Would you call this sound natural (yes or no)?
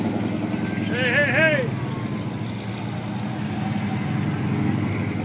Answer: yes